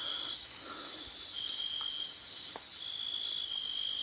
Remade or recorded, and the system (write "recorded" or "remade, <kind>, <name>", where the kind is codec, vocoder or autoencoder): recorded